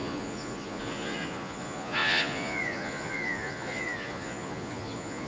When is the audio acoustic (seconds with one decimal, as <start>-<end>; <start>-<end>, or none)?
none